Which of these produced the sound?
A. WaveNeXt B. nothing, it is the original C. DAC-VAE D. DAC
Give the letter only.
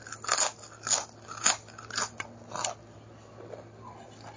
B